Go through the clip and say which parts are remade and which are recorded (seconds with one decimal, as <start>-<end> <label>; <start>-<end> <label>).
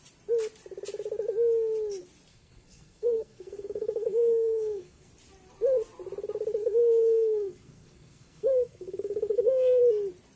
0.0-2.3 recorded; 2.3-5.1 remade; 5.1-6.6 recorded; 6.6-9.8 remade; 9.8-10.4 recorded